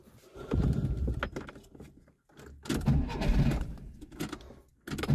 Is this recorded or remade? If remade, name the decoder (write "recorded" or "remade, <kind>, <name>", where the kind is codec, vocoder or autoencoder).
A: recorded